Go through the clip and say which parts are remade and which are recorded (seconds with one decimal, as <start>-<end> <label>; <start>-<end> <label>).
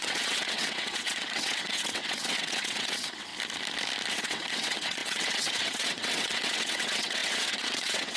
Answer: 0.0-3.3 remade; 3.3-4.1 recorded; 4.1-8.2 remade